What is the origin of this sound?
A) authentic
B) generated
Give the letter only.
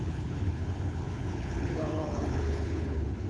B